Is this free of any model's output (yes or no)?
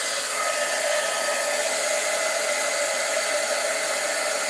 yes